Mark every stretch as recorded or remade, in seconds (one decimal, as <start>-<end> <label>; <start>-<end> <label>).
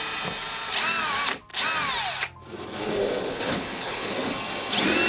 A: 0.0-3.3 recorded; 3.3-4.1 remade; 4.1-5.1 recorded